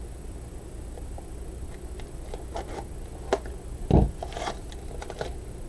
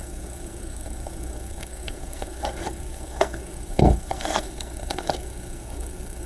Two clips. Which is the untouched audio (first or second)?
first